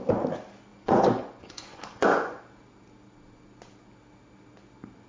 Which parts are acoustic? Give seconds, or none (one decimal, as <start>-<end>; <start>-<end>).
0.0-0.7; 2.4-5.1